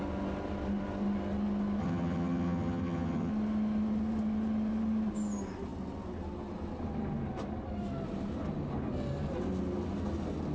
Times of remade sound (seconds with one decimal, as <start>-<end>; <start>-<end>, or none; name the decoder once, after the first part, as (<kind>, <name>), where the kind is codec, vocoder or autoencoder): 1.8-3.3 (vocoder, HiFi-GAN)